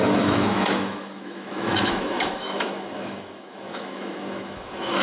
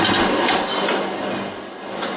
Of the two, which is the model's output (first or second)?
first